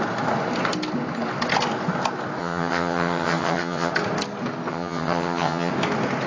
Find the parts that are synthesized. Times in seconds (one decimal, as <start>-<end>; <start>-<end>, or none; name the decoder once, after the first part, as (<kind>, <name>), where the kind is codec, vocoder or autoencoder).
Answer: 2.4-3.9 (vocoder, HiFi-GAN); 4.7-5.7